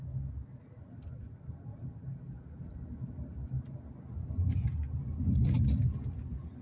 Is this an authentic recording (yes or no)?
yes